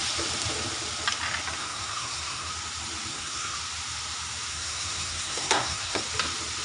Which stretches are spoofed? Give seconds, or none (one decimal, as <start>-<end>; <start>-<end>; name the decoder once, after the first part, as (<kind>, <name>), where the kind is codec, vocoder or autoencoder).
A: 1.6-2.5 (codec, SNAC); 3.1-3.6; 4.5-6.0